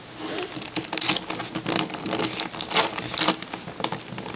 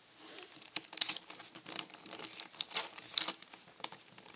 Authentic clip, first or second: first